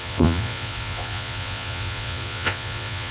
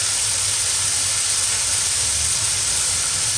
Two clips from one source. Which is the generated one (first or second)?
first